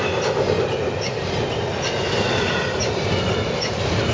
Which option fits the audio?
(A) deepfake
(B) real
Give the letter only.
B